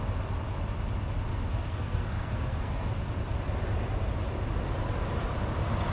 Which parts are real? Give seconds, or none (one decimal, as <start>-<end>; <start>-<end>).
0.0-1.3; 2.9-5.9